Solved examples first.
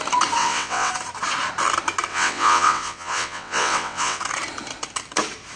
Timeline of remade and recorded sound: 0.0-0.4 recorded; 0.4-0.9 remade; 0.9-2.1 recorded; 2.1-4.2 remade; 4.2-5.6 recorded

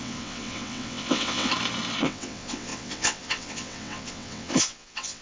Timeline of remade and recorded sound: 0.0-1.5 remade; 1.5-2.0 recorded; 2.0-5.2 remade